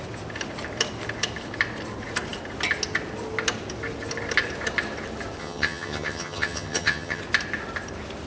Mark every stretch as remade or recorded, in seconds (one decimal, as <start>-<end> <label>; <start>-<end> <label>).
0.0-5.4 recorded; 5.4-7.2 remade; 7.2-8.3 recorded